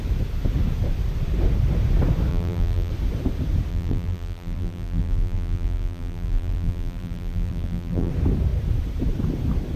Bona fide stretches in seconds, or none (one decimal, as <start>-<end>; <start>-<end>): 0.0-2.3; 2.9-3.7; 8.1-9.8